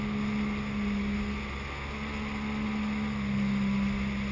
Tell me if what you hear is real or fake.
real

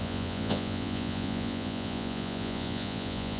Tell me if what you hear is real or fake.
fake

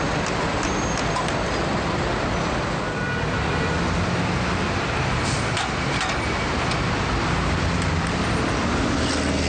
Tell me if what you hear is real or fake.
real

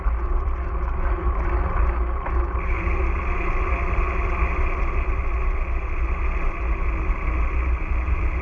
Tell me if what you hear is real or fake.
real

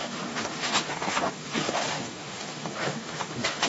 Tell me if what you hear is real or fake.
fake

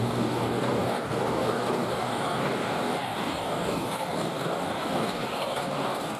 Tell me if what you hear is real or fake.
fake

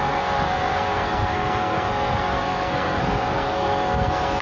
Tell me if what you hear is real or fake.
fake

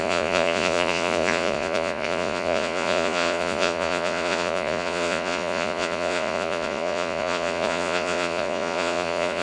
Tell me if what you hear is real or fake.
fake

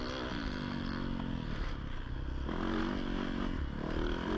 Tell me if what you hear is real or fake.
real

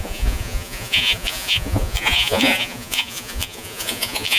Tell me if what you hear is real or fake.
fake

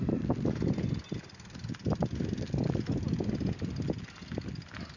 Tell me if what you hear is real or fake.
real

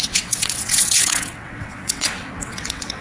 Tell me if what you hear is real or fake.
fake